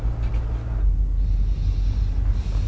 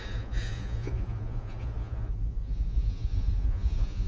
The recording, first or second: first